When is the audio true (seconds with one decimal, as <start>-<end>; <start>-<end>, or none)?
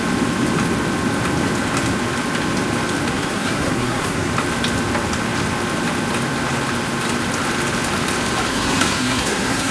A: 0.0-3.1; 4.3-8.5